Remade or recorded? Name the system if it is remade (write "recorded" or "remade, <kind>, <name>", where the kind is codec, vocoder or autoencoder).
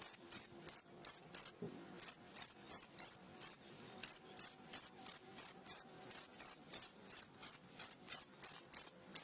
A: recorded